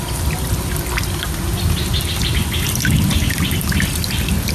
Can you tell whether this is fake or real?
real